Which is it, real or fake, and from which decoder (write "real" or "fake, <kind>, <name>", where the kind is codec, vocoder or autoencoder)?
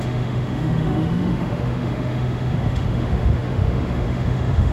fake, autoencoder, DAC-VAE